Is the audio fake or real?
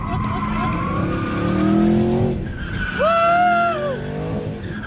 real